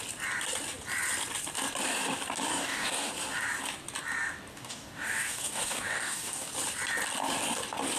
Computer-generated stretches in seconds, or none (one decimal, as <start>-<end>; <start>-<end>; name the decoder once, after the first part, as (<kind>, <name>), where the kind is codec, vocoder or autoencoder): 2.5-3.1 (codec, DAC); 4.5-6.5